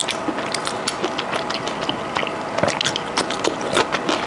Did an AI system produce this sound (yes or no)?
no